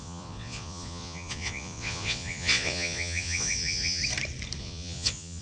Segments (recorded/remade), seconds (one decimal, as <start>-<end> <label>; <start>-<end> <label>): 0.0-4.0 remade; 4.0-4.6 recorded; 4.6-5.4 remade